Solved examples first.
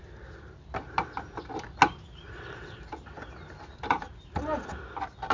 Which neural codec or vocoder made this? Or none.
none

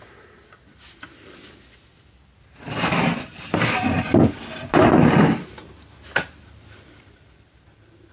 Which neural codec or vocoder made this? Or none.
none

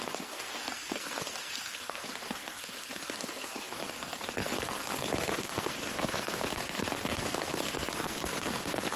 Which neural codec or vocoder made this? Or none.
codec, SNAC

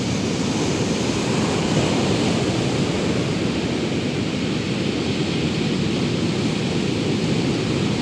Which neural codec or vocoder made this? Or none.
none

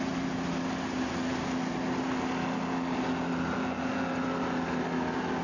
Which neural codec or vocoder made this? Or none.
none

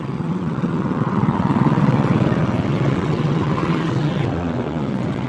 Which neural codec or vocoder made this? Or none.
vocoder, WaveNeXt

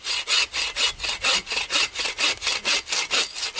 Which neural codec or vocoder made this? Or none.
none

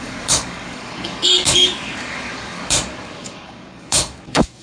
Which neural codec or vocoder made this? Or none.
codec, DAC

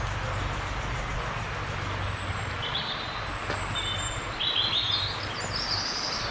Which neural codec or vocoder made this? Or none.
none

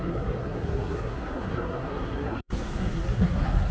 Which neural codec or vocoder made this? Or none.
codec, SNAC